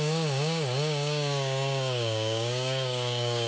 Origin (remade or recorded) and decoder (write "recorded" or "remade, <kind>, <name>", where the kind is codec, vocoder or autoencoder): remade, codec, DAC